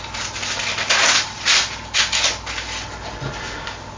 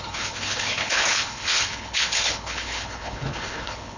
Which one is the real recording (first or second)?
first